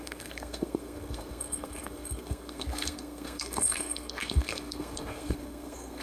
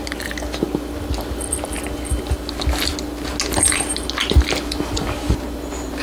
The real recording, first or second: second